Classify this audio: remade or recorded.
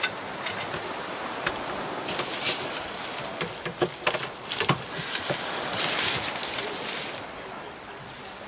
recorded